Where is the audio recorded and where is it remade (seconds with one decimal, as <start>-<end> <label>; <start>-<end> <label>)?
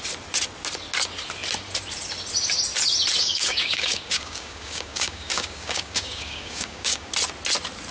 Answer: 0.0-3.2 recorded; 3.2-7.1 remade; 7.1-7.9 recorded